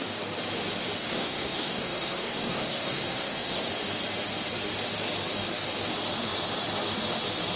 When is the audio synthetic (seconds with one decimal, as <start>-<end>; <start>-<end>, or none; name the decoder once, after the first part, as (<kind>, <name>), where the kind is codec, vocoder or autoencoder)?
1.0-3.7 (codec, SNAC)